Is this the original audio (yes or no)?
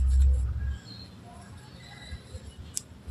yes